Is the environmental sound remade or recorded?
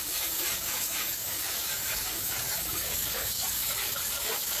remade